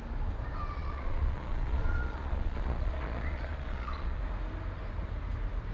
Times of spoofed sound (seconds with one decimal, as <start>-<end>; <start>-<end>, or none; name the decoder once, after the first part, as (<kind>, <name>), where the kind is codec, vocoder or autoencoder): 0.8-4.2 (vocoder, Vocos)